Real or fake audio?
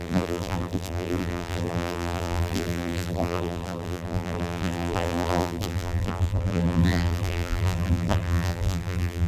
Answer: fake